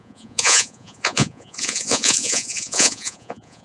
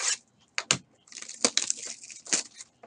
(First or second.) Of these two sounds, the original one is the second